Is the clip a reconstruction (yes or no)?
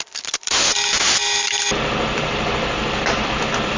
yes